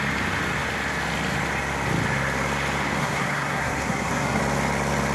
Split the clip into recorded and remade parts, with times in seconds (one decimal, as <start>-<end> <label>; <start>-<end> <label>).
0.0-3.0 recorded; 3.0-4.4 remade; 4.4-5.1 recorded